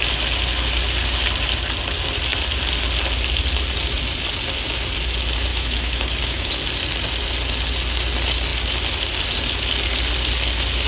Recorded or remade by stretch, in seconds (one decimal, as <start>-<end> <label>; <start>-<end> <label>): 0.0-5.5 recorded; 5.5-6.5 remade; 6.5-10.9 recorded